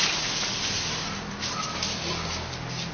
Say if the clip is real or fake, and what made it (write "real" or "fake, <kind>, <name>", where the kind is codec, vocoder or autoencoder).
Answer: real